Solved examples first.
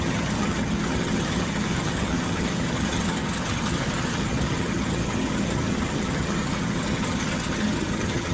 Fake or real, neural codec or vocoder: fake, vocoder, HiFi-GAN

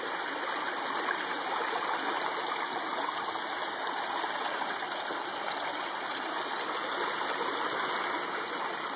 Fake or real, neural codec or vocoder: real